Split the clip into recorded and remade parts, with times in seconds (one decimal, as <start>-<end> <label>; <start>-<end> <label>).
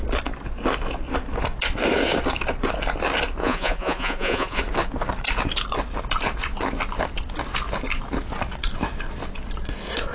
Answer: 0.0-3.4 recorded; 3.4-4.6 remade; 4.6-10.1 recorded